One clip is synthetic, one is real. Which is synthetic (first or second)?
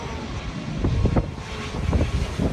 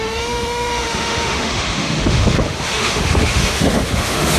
second